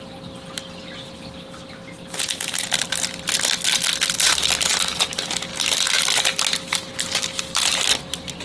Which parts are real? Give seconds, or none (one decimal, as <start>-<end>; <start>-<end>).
0.0-8.4